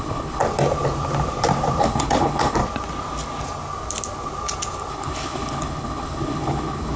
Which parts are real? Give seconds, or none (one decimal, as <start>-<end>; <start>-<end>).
0.4-1.8; 2.6-4.9